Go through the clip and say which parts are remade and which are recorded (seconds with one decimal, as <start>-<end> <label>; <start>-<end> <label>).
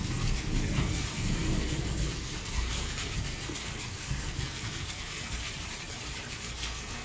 0.0-5.5 remade; 5.5-6.3 recorded; 6.3-7.0 remade